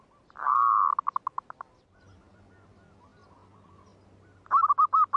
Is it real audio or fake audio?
real